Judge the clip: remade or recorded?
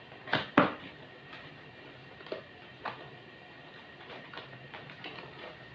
recorded